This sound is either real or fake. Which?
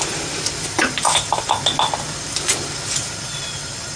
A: real